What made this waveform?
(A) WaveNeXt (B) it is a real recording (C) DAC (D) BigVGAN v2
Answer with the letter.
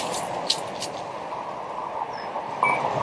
B